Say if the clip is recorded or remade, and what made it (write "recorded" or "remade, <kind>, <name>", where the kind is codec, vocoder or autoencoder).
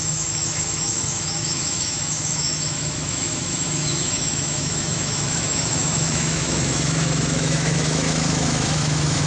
remade, autoencoder, DAC-VAE